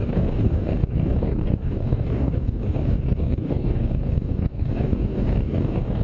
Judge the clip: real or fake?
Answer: fake